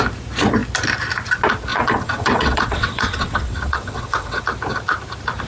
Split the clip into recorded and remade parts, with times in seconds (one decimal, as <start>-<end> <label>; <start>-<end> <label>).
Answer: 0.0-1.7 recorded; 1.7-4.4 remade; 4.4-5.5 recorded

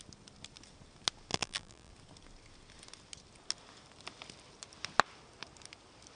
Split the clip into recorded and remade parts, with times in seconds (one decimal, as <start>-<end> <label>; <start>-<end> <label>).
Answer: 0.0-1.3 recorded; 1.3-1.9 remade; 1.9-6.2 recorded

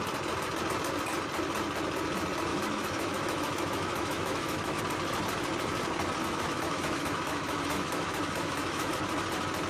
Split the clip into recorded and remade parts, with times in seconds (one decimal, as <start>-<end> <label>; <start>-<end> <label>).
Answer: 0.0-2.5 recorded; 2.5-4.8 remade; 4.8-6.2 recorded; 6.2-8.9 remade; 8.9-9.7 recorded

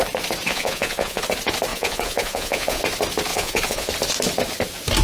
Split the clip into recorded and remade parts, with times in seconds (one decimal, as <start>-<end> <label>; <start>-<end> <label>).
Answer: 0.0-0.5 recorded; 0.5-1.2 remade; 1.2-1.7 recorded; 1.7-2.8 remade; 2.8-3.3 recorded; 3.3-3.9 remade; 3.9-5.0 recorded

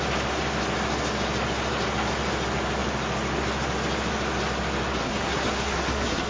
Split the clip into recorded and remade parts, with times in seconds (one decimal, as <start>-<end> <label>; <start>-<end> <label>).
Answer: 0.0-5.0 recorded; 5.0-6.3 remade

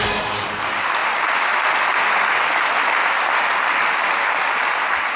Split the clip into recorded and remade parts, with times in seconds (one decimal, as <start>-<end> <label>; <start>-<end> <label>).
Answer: 0.0-5.2 recorded

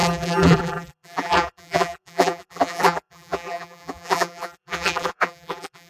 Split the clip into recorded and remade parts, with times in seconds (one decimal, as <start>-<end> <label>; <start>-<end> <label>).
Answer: 0.0-5.9 remade

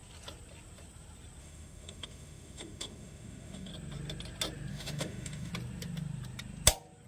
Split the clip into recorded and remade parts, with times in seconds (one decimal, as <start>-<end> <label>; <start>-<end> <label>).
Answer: 0.0-1.4 recorded; 1.4-3.7 remade; 3.7-4.7 recorded; 4.7-5.5 remade; 5.5-7.1 recorded